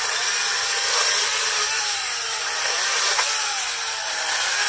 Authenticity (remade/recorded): recorded